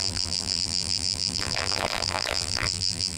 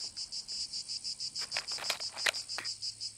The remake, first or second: first